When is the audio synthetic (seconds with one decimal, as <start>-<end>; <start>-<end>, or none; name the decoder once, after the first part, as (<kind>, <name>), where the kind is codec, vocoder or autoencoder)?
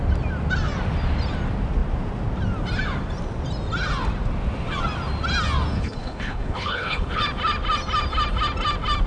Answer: 5.7-7.2 (codec, HILCodec)